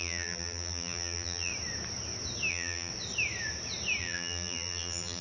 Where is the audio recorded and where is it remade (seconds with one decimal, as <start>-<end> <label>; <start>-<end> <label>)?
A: 0.0-1.5 remade; 1.5-2.5 recorded; 2.5-2.9 remade; 2.9-4.0 recorded; 4.0-5.2 remade